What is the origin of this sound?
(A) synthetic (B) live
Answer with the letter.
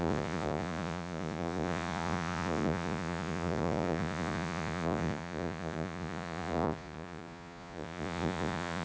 A